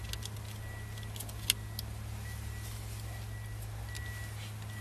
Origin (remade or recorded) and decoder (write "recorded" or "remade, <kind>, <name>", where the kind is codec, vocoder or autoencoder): recorded